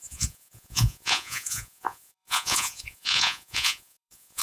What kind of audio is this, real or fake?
fake